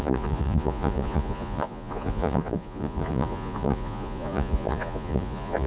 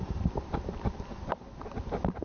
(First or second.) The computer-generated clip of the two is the first